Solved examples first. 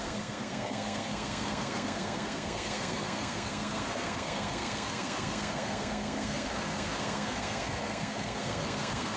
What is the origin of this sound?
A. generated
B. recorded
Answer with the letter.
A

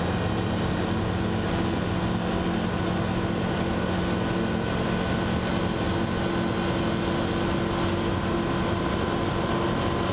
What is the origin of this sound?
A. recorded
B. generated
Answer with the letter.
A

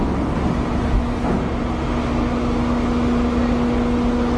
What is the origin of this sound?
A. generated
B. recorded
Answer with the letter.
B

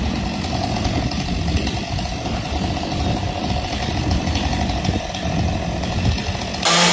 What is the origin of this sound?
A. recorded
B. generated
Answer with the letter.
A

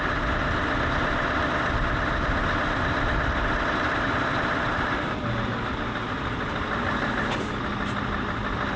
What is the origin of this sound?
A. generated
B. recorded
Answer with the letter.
B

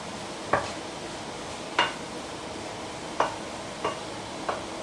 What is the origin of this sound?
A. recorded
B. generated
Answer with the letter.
A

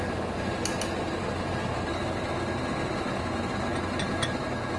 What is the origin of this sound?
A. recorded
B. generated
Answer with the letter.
A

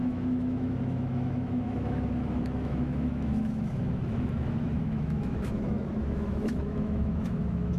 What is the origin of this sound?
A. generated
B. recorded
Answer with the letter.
A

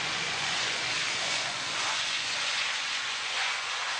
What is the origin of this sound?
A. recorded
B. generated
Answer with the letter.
B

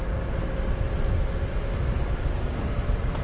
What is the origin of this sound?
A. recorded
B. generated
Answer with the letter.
A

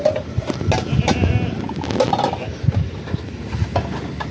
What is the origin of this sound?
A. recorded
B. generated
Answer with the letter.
A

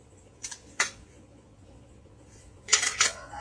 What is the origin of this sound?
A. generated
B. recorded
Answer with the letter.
A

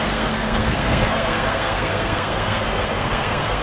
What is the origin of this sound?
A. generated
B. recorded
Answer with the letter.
A